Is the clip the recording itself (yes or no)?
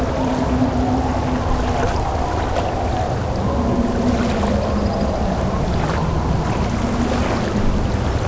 yes